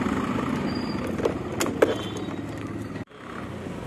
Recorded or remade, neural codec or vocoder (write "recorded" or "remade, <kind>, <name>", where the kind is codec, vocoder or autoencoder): recorded